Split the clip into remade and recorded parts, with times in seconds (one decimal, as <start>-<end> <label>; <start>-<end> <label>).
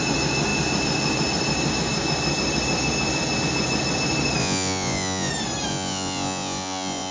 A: 0.0-4.4 recorded; 4.4-5.3 remade; 5.3-5.7 recorded; 5.7-7.1 remade